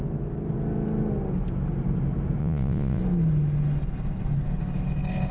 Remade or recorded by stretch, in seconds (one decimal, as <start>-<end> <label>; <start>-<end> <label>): 0.0-2.4 recorded; 2.4-3.0 remade; 3.0-5.3 recorded